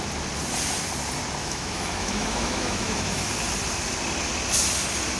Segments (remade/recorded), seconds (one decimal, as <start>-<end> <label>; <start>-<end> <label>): 0.0-1.4 recorded; 1.4-3.3 remade; 3.3-5.2 recorded